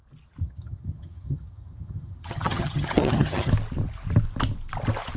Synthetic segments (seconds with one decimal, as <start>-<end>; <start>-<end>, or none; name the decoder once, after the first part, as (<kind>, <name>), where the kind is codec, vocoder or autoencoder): 0.4-3.5 (vocoder, HiFi-GAN)